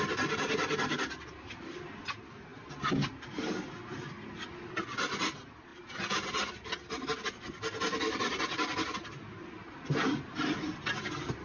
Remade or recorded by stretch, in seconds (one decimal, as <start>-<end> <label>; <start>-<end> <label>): 0.0-11.4 recorded